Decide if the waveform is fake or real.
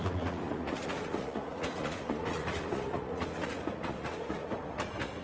fake